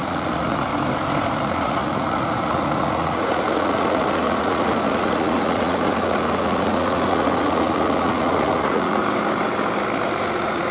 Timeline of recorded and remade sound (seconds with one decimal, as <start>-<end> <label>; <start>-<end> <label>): 0.0-0.7 remade; 0.7-1.4 recorded; 1.4-9.0 remade; 9.0-10.2 recorded; 10.2-10.7 remade